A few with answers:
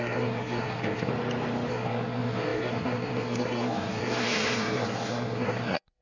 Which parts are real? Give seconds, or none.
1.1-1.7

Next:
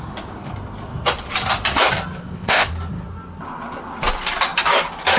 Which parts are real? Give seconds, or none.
0.0-2.2; 2.7-5.2

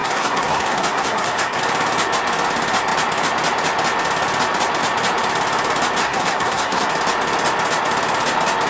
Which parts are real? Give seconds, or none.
1.6-6.0; 6.9-8.7

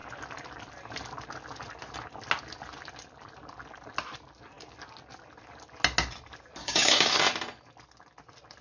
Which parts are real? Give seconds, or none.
0.0-6.6; 7.2-8.6

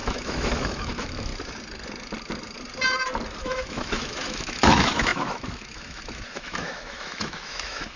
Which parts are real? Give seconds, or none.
1.3-3.4

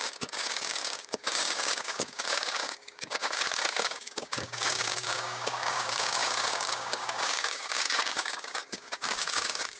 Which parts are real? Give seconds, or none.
none

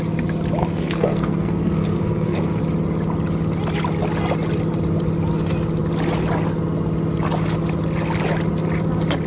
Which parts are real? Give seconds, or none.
0.0-0.6; 2.6-9.3

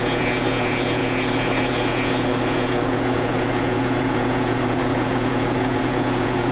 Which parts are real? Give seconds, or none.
none